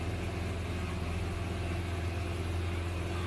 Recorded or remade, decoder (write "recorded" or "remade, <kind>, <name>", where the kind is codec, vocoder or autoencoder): recorded